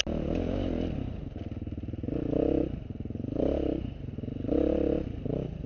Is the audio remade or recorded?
recorded